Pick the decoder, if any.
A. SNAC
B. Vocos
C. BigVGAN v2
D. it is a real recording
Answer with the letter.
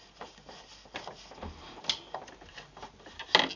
D